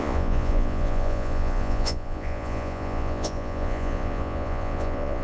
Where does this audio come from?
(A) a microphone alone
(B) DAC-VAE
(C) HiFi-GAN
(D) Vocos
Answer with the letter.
D